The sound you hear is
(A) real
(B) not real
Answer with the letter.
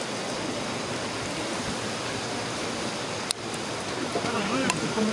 A